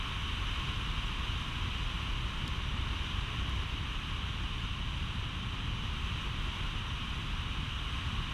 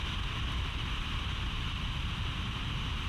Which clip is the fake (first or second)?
second